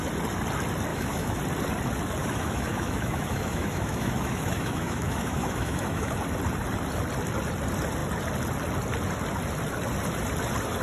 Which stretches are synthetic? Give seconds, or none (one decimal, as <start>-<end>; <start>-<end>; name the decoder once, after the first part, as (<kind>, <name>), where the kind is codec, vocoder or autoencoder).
0.9-1.4 (autoencoder, DAC-VAE); 2.2-6.1